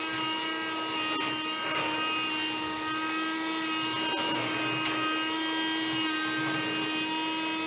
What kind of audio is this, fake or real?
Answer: real